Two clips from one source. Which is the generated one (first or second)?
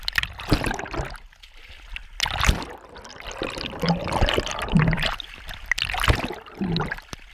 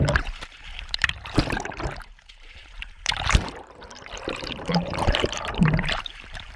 second